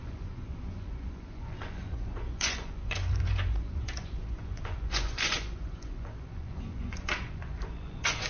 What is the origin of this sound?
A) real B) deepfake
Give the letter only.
B